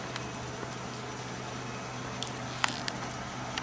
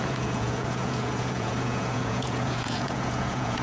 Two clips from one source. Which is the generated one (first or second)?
second